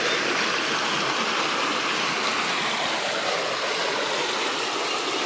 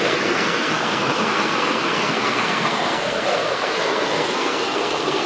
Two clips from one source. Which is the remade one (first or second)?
second